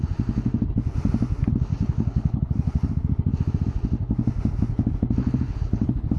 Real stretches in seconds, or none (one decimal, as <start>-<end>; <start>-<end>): 0.0-1.7; 2.9-5.2